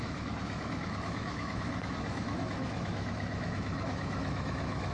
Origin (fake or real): fake